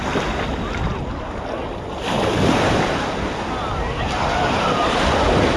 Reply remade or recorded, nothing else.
recorded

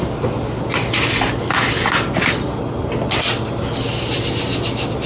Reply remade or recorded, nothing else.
recorded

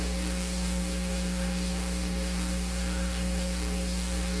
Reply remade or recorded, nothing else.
remade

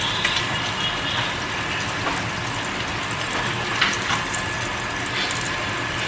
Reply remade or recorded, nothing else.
recorded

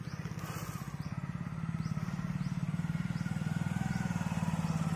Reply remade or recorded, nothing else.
recorded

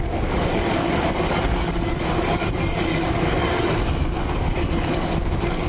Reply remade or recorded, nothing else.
remade